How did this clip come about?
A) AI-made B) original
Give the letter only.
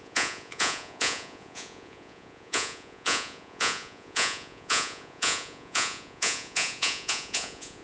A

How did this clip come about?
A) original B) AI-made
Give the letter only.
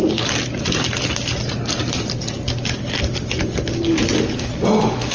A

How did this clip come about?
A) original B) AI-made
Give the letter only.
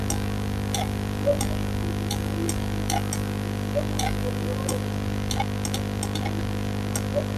A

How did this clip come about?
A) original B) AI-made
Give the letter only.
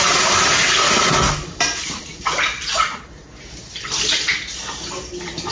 A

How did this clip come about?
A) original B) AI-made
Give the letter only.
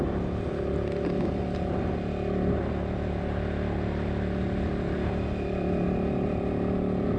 A